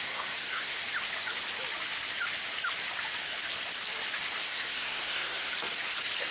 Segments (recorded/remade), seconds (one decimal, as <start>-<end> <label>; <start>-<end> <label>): 0.0-0.8 remade; 0.8-4.4 recorded; 4.4-5.5 remade; 5.5-6.3 recorded